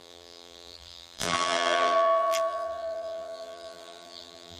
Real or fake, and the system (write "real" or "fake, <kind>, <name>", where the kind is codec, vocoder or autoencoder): fake, vocoder, BigVGAN v2